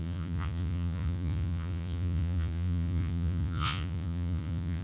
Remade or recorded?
remade